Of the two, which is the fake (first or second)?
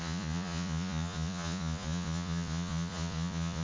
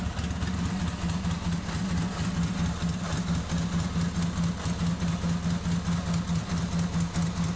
first